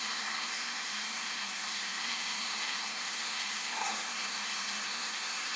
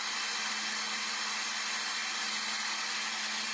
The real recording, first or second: second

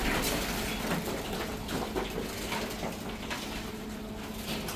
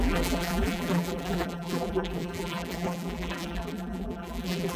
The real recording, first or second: first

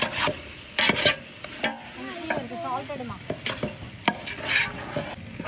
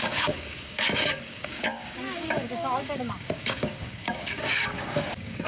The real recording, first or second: first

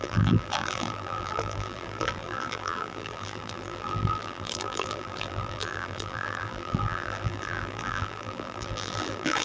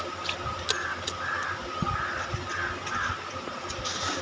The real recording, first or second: second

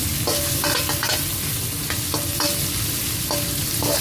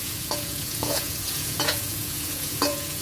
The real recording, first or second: first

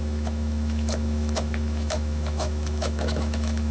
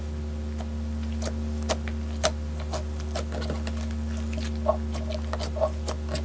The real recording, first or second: second